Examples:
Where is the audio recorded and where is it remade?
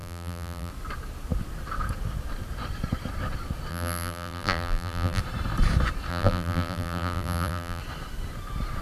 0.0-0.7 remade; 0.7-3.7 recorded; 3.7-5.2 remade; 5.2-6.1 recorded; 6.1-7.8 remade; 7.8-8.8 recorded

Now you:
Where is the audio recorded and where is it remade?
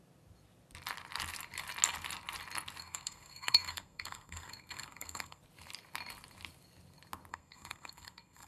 0.0-2.8 recorded; 2.8-5.4 remade; 5.4-7.3 recorded; 7.3-8.5 remade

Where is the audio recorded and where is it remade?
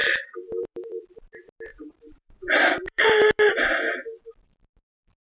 0.0-1.0 remade; 1.0-1.7 recorded; 1.7-3.4 remade; 3.4-5.2 recorded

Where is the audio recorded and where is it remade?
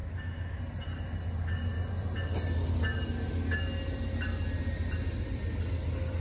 0.0-0.6 remade; 0.6-6.2 recorded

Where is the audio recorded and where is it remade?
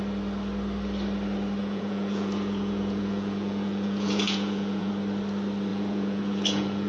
0.0-1.6 recorded; 1.6-4.9 remade; 4.9-5.7 recorded; 5.7-6.9 remade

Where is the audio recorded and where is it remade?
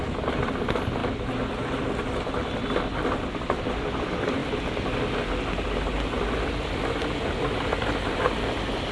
0.0-8.9 recorded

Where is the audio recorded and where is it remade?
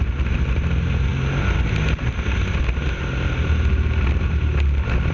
0.0-5.1 recorded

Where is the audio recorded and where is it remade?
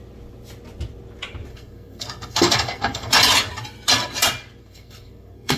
0.0-1.5 recorded; 1.5-3.1 remade; 3.1-4.6 recorded; 4.6-5.6 remade